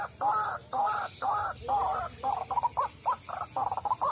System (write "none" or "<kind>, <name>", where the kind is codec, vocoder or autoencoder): none